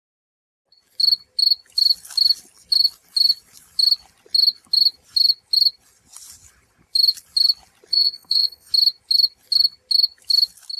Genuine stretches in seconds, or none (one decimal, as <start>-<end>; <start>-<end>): 0.0-7.9; 8.7-10.8